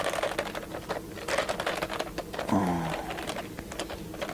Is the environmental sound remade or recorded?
recorded